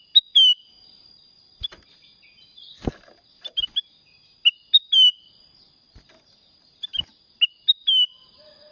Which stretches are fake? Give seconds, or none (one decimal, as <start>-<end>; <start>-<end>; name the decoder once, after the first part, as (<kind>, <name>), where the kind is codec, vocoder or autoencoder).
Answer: none